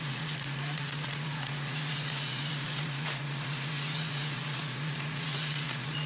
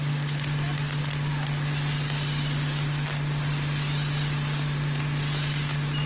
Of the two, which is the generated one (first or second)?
first